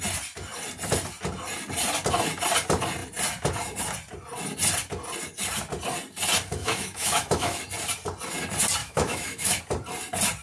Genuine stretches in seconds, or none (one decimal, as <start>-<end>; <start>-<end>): 0.0-6.6; 7.6-8.8; 9.6-10.4